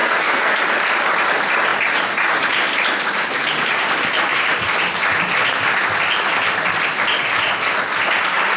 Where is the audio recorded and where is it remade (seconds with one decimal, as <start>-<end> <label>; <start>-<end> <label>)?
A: 0.0-0.6 remade; 0.6-8.6 recorded